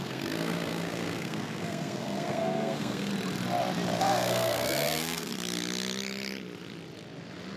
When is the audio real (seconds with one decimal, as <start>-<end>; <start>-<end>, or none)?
3.1-4.0; 5.3-7.6